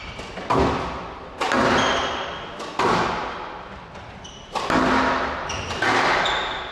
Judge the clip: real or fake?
real